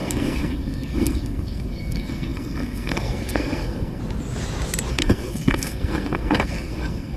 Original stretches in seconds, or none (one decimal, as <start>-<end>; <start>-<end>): 4.0-4.9